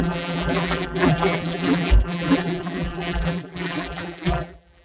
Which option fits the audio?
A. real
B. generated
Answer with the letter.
B